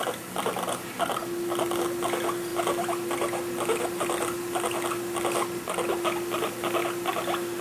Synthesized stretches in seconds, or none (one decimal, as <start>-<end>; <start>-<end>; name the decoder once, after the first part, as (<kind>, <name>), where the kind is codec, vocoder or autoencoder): none